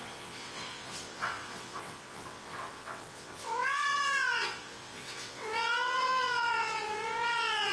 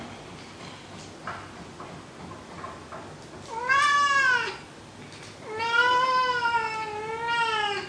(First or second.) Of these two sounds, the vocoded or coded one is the first